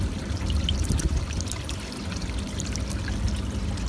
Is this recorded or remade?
recorded